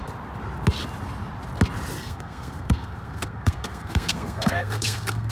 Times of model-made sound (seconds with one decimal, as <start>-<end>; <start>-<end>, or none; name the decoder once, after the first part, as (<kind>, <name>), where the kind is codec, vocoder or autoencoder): 2.0-5.3 (codec, SNAC)